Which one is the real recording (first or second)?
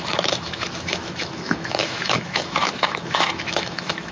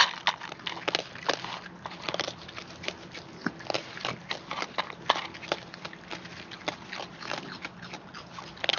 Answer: second